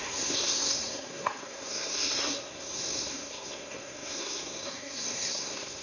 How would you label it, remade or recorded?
remade